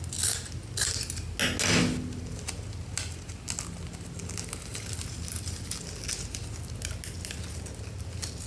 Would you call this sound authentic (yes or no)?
yes